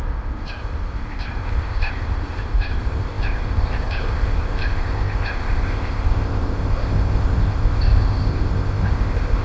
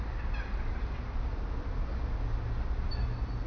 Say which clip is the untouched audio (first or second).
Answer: second